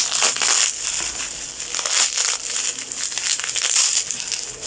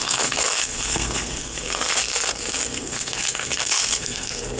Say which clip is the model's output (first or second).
second